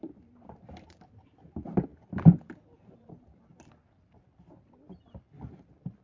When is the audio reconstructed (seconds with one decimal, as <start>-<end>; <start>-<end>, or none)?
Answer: none